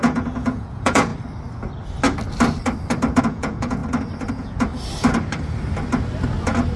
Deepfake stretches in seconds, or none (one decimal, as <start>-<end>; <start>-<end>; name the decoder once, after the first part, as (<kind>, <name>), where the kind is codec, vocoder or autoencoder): 0.0-1.1 (vocoder, Vocos); 3.2-3.8; 4.3-4.7